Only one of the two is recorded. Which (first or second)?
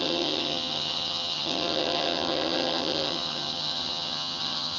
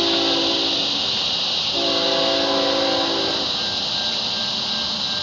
second